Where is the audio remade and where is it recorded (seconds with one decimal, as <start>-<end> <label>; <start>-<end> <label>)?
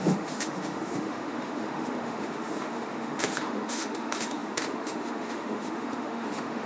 0.0-6.7 remade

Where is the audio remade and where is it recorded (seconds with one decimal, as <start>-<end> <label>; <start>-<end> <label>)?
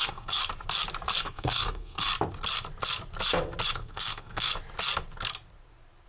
0.0-0.4 remade; 0.4-1.2 recorded; 1.2-2.1 remade; 2.1-3.7 recorded; 3.7-4.5 remade; 4.5-6.1 recorded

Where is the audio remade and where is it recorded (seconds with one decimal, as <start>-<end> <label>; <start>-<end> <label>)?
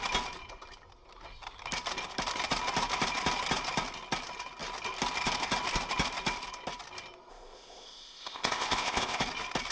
0.0-7.3 recorded; 7.3-9.2 remade; 9.2-9.7 recorded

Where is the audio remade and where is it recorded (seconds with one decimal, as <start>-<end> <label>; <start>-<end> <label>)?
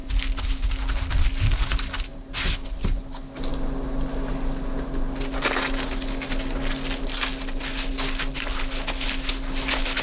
0.0-10.0 recorded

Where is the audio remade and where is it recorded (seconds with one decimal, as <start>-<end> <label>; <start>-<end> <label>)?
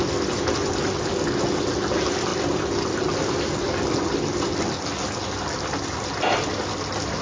0.0-7.2 recorded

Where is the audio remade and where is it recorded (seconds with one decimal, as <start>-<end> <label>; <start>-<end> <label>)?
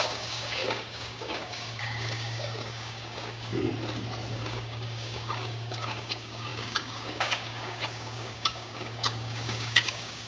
0.0-3.5 remade; 3.5-4.3 recorded; 4.3-10.3 remade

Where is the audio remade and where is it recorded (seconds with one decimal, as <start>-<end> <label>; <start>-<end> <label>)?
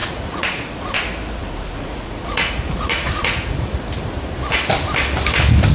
0.0-0.7 remade; 0.7-1.4 recorded; 1.4-3.9 remade; 3.9-5.7 recorded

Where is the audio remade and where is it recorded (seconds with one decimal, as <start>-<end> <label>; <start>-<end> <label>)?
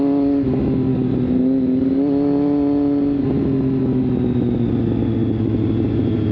0.0-6.3 recorded